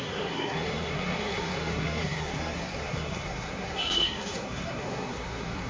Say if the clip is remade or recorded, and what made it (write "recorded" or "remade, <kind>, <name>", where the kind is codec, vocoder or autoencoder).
remade, codec, SNAC